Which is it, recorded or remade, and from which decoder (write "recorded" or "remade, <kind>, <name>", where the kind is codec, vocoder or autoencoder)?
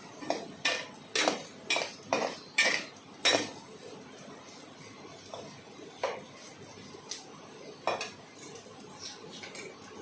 recorded